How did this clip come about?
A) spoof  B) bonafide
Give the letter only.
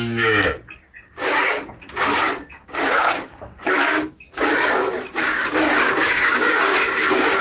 A